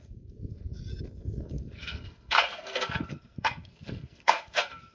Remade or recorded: remade